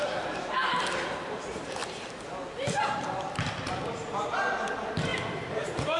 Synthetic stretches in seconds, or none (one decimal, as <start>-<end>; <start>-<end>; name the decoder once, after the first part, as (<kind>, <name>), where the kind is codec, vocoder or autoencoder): 0.0-6.0 (vocoder, BigVGAN v2)

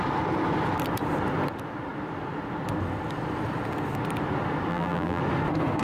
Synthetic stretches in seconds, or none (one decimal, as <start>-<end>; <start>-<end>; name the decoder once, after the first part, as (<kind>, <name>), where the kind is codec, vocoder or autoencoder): 4.7-5.2 (vocoder, BigVGAN v2)

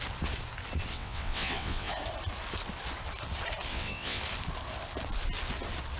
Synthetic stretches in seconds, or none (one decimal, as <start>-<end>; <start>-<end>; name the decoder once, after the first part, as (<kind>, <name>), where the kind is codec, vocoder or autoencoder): 0.9-1.9 (vocoder, WaveNeXt); 3.7-4.2

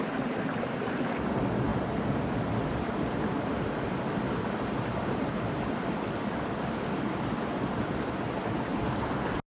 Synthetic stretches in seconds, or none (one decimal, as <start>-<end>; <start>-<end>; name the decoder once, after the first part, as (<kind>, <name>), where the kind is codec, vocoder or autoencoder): none

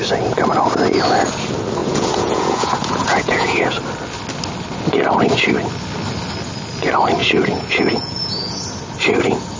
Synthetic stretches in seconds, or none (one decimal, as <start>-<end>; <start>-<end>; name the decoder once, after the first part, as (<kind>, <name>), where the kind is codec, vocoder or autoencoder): 1.8-3.8 (vocoder, Vocos); 7.2-8.6

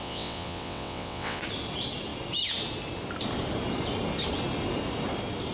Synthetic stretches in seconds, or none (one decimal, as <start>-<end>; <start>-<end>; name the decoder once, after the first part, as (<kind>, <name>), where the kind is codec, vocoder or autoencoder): 0.0-1.4 (vocoder, WaveNeXt)